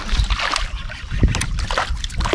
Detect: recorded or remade recorded